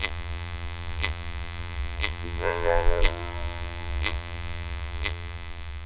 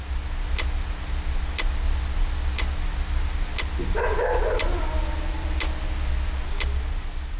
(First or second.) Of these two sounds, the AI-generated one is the first